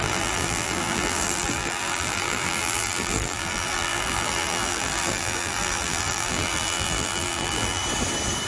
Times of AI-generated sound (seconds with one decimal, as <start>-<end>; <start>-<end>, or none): 0.0-7.8